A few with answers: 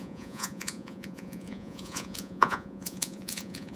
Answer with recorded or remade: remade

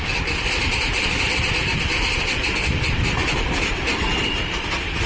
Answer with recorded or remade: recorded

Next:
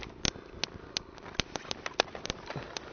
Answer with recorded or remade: recorded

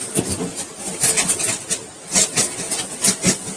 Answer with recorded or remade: recorded